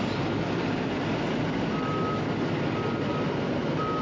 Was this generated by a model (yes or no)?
no